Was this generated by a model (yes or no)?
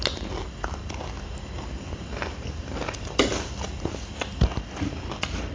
no